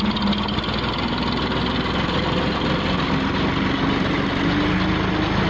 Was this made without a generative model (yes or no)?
yes